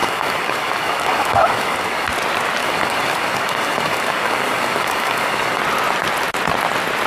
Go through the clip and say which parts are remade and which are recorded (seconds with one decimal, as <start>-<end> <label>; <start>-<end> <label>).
0.0-2.1 remade; 2.1-2.6 recorded; 2.6-5.6 remade; 5.6-7.1 recorded

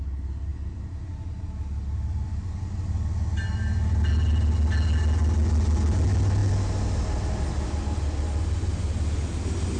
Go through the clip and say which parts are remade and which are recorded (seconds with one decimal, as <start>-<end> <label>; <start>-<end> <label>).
0.0-9.8 recorded

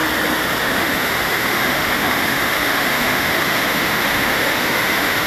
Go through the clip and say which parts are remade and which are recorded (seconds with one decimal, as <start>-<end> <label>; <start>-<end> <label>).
0.0-0.6 recorded; 0.6-5.3 remade

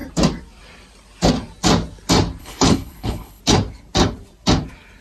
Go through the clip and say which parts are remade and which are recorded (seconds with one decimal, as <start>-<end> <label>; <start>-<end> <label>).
0.0-2.4 recorded; 2.4-3.4 remade; 3.4-5.0 recorded

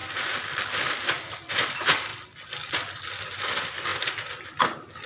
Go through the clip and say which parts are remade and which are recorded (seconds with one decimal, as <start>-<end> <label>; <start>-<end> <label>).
0.0-5.1 recorded

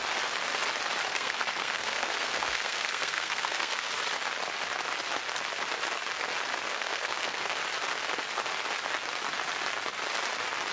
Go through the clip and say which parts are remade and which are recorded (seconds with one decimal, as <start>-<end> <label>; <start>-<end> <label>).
0.0-1.1 recorded; 1.1-3.9 remade; 3.9-6.5 recorded; 6.5-7.6 remade; 7.6-10.7 recorded